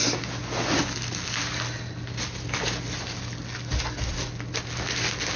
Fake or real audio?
real